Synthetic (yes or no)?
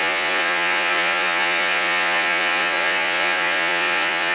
yes